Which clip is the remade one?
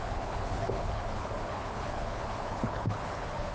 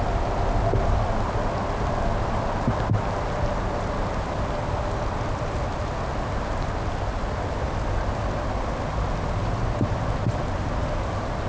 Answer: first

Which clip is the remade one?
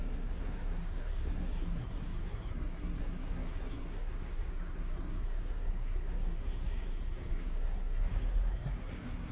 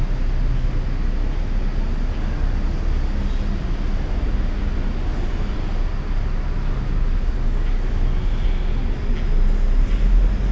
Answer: first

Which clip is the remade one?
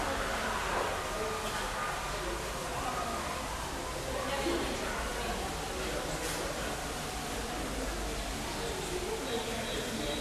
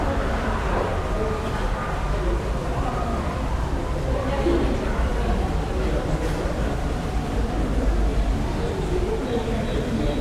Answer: second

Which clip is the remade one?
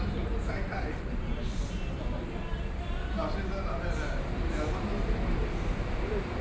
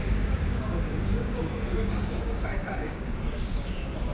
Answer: second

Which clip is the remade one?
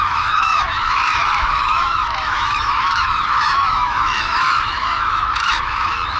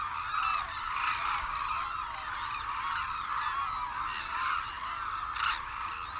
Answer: first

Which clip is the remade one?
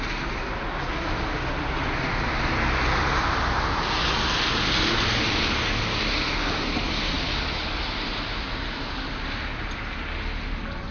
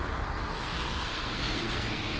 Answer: second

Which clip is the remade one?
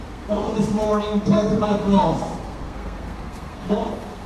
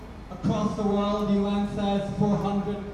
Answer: first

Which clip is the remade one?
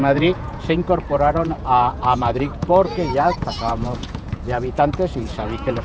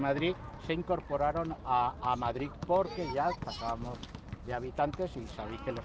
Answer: first